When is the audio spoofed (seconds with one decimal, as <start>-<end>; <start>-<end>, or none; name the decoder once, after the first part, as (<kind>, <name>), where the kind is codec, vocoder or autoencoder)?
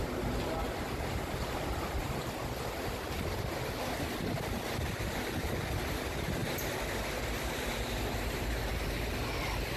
none